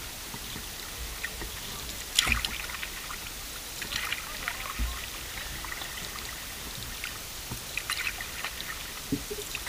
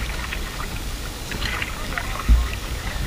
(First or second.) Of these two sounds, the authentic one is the first